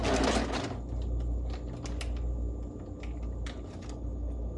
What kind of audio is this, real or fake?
real